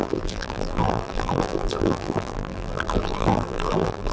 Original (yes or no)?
no